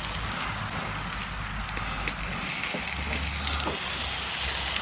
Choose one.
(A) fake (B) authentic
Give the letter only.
B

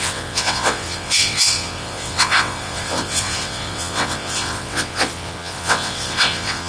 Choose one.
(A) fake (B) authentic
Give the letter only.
A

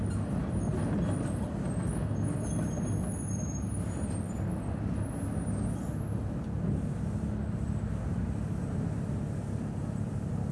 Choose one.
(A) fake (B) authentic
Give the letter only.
B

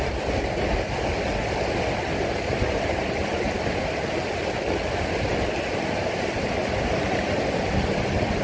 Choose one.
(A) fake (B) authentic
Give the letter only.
B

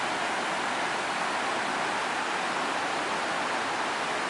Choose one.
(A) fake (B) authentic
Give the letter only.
B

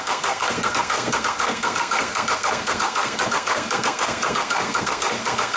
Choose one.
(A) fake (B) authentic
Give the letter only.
A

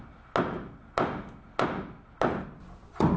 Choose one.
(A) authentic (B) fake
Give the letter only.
A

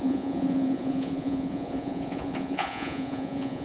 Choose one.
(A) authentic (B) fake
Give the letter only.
B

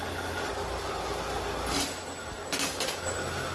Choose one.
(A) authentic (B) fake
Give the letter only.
A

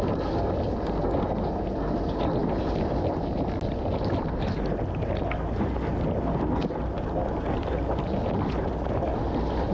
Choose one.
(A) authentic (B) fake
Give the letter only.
A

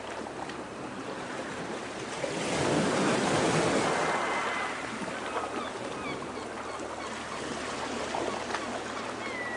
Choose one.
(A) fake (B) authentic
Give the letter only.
B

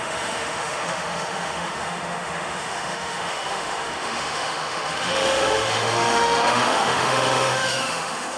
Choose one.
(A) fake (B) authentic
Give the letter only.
A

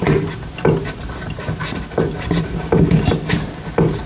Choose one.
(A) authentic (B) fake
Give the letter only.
A